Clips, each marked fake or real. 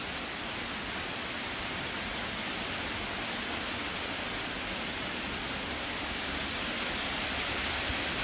fake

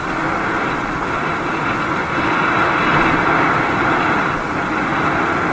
real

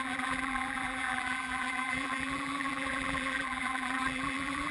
fake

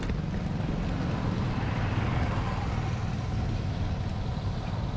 real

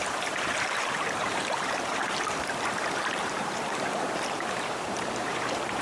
fake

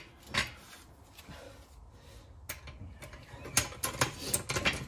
real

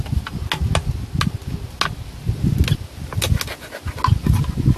real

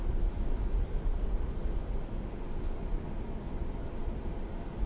real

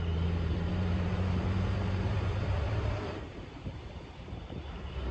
fake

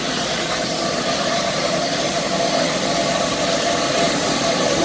fake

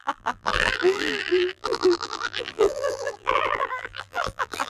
fake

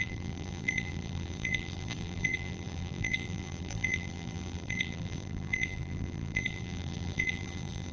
fake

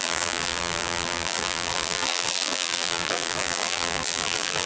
fake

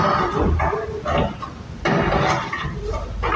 real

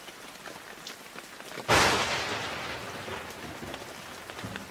real